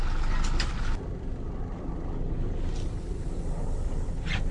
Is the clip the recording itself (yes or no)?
yes